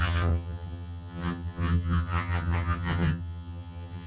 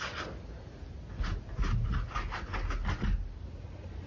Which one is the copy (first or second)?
first